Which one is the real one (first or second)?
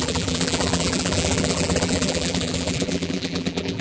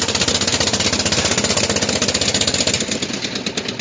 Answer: second